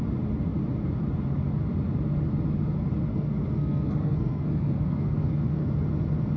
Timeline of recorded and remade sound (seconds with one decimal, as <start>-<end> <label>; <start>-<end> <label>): 0.0-3.1 recorded; 3.1-5.7 remade; 5.7-6.4 recorded